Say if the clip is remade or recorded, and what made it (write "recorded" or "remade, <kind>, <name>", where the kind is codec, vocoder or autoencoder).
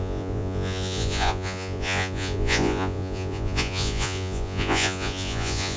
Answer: remade, vocoder, Vocos